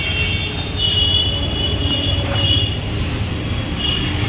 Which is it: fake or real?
real